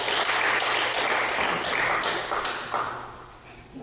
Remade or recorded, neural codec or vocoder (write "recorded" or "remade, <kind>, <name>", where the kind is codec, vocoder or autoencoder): recorded